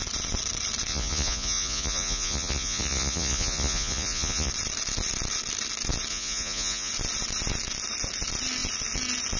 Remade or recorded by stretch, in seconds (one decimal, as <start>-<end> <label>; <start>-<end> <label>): 0.0-0.9 recorded; 0.9-4.5 remade; 4.5-6.1 recorded; 6.1-6.9 remade; 6.9-9.4 recorded